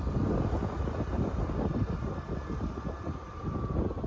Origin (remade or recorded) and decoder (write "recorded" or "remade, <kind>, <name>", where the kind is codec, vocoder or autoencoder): recorded